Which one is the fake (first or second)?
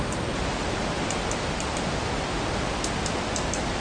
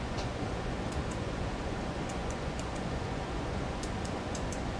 second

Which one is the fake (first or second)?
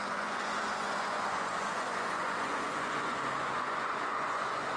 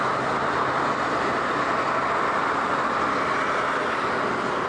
first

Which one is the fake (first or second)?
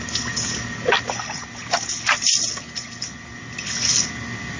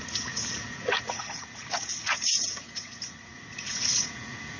second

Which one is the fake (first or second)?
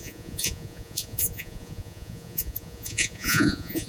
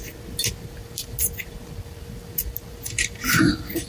first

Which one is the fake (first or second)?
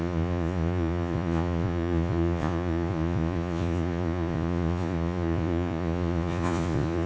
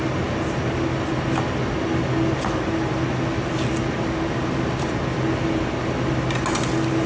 first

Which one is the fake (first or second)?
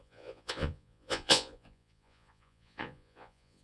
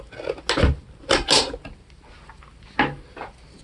first